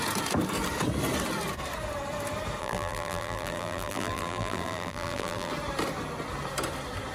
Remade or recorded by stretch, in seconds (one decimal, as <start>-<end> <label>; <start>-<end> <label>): 0.0-2.6 recorded; 2.6-5.5 remade; 5.5-7.1 recorded